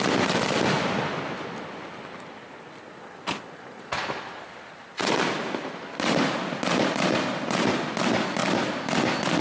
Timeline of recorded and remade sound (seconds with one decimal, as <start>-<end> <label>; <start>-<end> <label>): 0.0-9.4 recorded